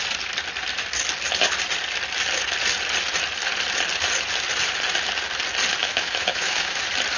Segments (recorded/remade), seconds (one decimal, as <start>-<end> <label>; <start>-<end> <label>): 0.0-5.8 recorded; 5.8-6.8 remade; 6.8-7.2 recorded